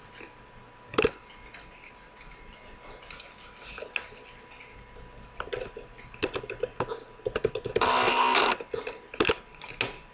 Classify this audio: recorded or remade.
recorded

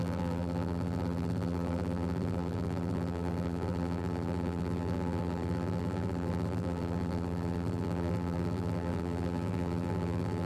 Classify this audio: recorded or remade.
remade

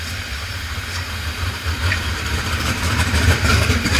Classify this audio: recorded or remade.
remade